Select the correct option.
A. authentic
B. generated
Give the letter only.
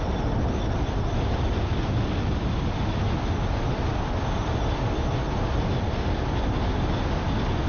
A